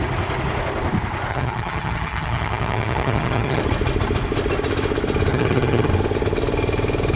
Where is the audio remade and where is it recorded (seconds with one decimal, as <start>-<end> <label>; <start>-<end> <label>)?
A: 0.0-1.3 recorded; 1.3-3.6 remade; 3.6-5.3 recorded; 5.3-5.9 remade; 5.9-7.2 recorded